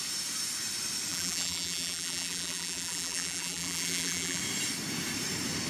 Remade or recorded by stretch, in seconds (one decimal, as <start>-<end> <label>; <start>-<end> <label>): 0.0-1.1 recorded; 1.1-4.4 remade; 4.4-5.7 recorded